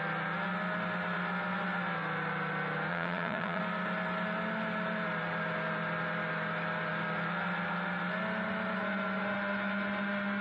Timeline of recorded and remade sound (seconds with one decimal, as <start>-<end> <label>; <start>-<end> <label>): 0.0-2.9 recorded; 2.9-3.6 remade; 3.6-10.4 recorded